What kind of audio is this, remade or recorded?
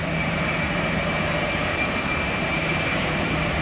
remade